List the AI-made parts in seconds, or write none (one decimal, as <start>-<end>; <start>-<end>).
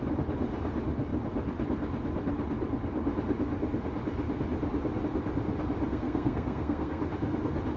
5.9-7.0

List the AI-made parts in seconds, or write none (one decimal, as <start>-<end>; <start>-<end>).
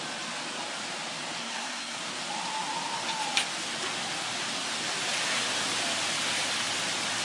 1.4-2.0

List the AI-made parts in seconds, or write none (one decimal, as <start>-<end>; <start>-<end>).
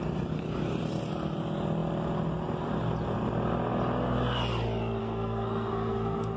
5.0-6.4